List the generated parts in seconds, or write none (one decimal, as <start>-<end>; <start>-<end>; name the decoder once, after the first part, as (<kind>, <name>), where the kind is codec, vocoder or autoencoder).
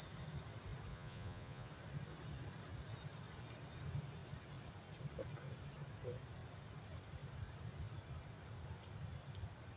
0.9-1.7 (vocoder, Vocos)